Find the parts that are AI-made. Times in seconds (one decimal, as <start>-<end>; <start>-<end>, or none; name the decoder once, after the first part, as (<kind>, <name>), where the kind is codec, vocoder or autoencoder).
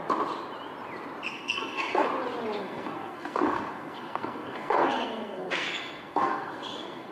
1.3-2.1 (codec, SNAC); 2.6-7.1